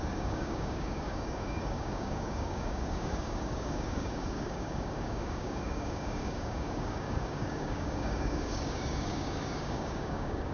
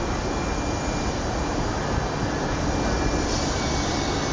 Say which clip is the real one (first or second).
second